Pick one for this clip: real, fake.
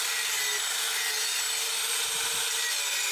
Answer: fake